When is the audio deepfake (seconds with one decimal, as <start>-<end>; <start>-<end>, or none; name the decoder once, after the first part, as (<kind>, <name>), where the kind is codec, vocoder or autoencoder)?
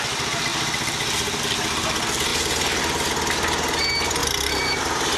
0.5-1.4 (vocoder, BigVGAN v2); 2.3-2.8; 4.2-5.2